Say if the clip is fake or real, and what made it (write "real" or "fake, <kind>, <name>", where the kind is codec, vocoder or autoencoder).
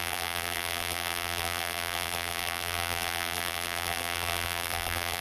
fake, vocoder, BigVGAN v2